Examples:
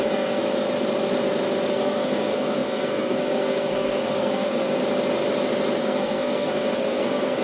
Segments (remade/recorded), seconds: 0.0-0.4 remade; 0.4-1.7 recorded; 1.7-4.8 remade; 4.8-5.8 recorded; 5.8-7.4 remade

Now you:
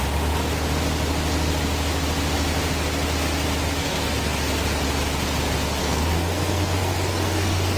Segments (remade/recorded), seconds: 0.0-3.8 recorded; 3.8-4.4 remade; 4.4-5.8 recorded; 5.8-7.8 remade